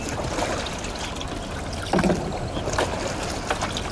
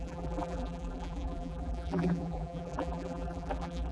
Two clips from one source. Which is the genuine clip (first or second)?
first